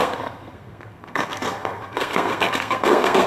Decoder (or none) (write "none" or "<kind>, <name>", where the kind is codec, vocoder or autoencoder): codec, SNAC